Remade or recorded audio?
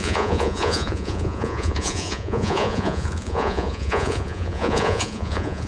remade